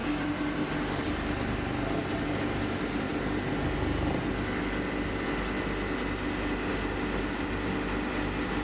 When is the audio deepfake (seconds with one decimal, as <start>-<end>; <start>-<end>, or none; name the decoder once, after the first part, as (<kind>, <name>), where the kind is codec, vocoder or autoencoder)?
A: none